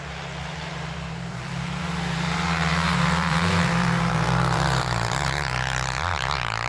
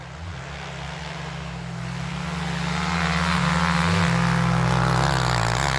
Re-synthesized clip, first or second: first